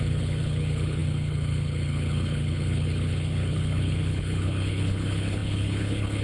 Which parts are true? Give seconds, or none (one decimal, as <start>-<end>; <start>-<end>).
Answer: none